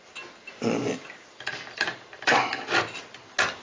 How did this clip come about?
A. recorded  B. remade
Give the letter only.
A